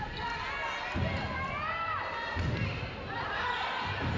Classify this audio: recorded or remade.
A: recorded